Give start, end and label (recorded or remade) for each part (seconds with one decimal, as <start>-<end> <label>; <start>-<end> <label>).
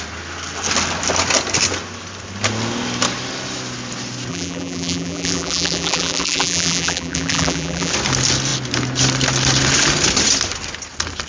0.0-4.3 recorded; 4.3-7.9 remade; 7.9-11.3 recorded